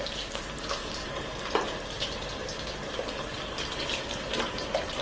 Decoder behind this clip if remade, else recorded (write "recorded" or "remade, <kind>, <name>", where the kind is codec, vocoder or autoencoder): remade, vocoder, BigVGAN v2